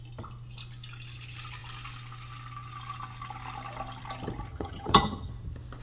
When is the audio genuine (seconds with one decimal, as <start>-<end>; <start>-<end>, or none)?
0.0-4.5; 5.3-5.8